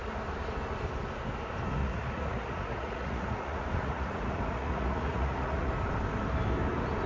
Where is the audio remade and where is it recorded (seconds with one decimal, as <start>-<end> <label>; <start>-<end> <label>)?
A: 0.0-1.8 recorded; 1.8-5.7 remade; 5.7-7.1 recorded